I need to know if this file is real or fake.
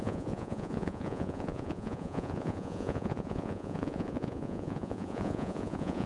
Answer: fake